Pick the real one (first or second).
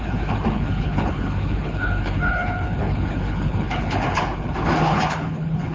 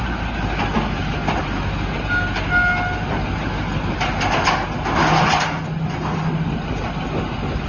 second